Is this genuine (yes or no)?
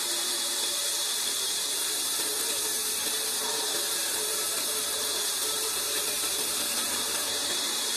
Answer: no